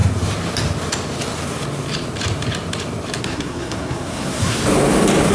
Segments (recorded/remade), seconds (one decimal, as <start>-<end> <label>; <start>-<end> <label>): 0.0-3.2 recorded; 3.2-4.6 remade; 4.6-5.3 recorded

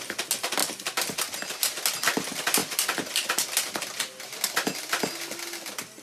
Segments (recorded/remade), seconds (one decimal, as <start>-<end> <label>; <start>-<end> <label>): 0.0-6.0 recorded

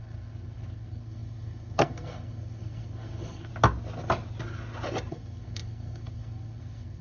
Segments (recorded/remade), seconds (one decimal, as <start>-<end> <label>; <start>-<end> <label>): 0.0-3.5 remade; 3.5-5.1 recorded; 5.1-7.0 remade

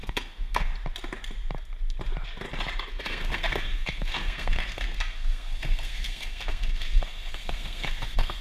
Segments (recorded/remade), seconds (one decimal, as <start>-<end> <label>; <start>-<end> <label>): 0.0-0.7 remade; 0.7-2.9 recorded; 2.9-8.4 remade

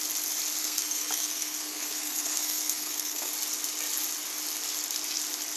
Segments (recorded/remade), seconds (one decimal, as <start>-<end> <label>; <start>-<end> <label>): 0.0-0.6 recorded; 0.6-3.3 remade; 3.3-5.6 recorded

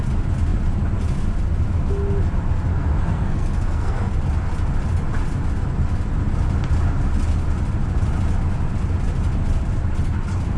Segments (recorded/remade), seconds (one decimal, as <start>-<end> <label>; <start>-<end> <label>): 0.0-2.7 recorded; 2.7-4.1 remade; 4.1-10.6 recorded